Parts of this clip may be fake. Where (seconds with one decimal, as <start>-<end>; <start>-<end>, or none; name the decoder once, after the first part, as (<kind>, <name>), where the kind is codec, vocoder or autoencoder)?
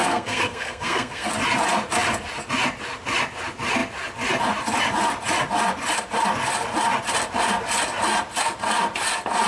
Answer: 0.0-1.3 (codec, SNAC)